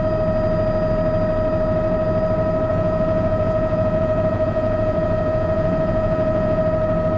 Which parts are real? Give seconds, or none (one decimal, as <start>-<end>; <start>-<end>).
0.0-2.7; 6.6-7.2